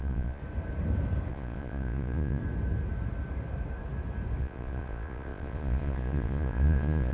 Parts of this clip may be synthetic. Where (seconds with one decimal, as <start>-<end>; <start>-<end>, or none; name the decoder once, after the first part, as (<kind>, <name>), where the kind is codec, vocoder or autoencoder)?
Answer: 0.0-0.4 (vocoder, Vocos); 1.3-2.4; 4.4-7.1